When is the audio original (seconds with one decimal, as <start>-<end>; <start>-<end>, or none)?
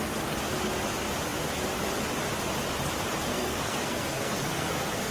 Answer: 0.0-3.3